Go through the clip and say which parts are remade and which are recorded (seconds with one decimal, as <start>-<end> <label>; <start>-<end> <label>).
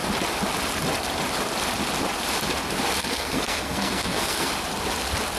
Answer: 0.0-3.0 recorded; 3.0-4.5 remade; 4.5-5.4 recorded